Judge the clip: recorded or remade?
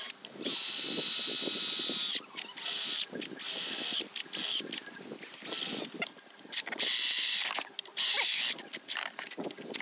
recorded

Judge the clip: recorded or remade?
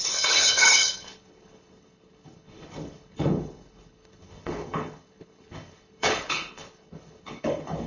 remade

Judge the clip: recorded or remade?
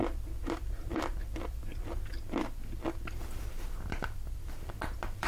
remade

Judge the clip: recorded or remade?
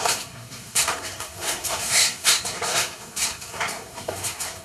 remade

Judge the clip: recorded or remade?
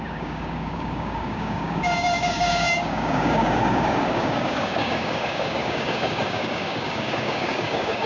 remade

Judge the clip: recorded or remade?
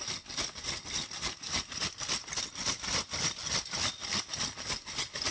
recorded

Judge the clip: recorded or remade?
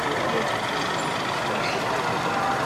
recorded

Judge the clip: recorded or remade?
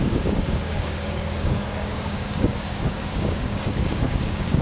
remade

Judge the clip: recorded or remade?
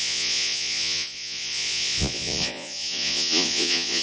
remade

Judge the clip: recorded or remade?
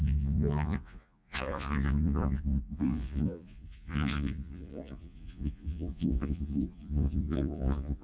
remade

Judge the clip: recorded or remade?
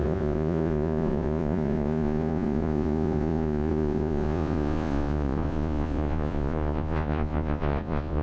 remade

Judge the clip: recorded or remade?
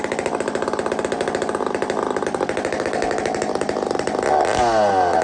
recorded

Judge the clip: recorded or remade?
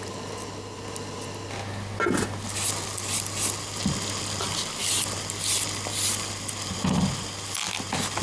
recorded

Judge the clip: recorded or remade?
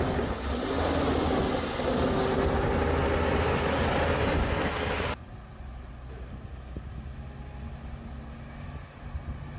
recorded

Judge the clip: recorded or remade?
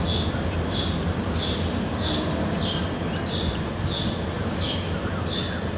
recorded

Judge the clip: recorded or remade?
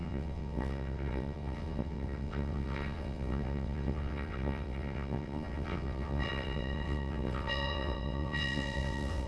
remade